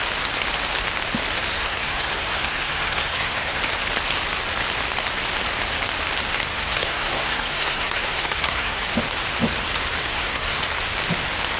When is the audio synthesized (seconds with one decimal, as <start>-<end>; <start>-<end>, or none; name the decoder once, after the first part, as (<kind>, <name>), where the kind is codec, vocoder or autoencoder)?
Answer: 1.5-3.6 (codec, SNAC); 6.5-8.8; 10.0-10.6

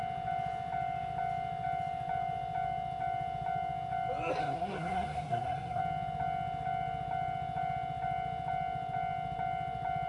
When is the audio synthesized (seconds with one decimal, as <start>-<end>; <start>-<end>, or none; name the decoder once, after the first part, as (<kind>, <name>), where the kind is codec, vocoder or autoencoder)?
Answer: 4.4-5.8 (codec, SNAC)

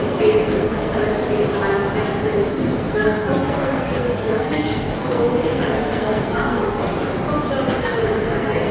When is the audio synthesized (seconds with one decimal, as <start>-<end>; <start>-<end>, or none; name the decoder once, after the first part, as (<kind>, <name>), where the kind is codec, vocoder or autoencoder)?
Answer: 0.0-1.0 (codec, SNAC); 2.5-6.8; 7.8-8.7

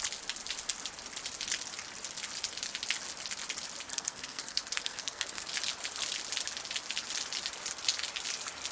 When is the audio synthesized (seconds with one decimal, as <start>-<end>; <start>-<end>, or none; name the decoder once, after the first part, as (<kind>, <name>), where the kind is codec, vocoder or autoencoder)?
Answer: 3.9-5.5 (codec, SNAC)

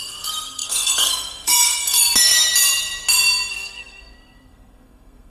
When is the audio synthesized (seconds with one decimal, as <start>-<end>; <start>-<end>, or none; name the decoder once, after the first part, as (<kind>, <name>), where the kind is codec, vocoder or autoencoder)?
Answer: 0.0-2.0 (codec, SNAC); 3.5-5.3

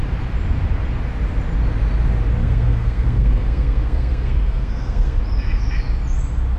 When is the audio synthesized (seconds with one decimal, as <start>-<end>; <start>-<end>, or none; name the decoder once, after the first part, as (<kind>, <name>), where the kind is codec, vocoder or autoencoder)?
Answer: 2.4-5.2 (codec, SNAC)

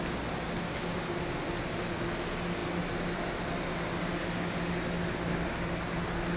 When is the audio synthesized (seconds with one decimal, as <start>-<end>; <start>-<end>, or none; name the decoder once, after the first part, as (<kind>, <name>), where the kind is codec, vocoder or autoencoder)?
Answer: none

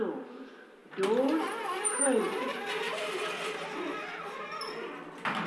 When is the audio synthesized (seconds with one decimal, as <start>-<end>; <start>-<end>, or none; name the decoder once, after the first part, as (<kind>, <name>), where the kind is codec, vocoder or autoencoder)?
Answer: none